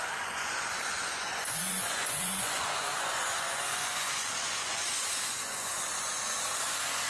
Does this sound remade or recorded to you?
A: remade